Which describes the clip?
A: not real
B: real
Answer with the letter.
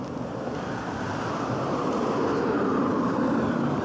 B